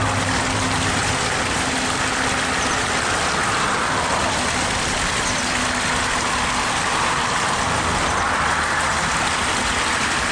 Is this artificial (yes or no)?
no